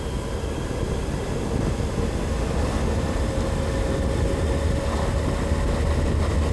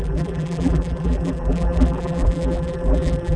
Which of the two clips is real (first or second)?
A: first